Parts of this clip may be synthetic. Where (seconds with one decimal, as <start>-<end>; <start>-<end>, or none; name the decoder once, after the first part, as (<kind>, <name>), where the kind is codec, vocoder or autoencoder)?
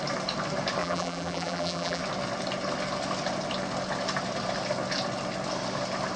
0.8-2.0 (vocoder, BigVGAN v2)